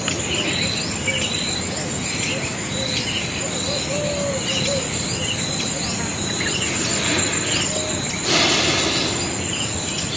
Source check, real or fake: real